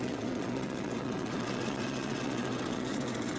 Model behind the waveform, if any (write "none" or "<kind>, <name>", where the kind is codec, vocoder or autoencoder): vocoder, WaveNeXt